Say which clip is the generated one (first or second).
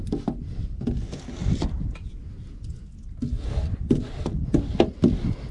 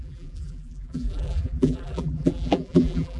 second